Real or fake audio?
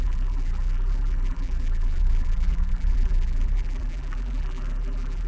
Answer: fake